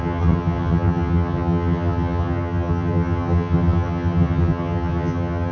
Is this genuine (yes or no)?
no